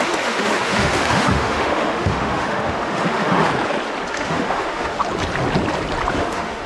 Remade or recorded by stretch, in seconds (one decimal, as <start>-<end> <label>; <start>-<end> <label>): 0.0-3.5 remade; 3.5-4.1 recorded; 4.1-5.0 remade; 5.0-6.1 recorded; 6.1-6.7 remade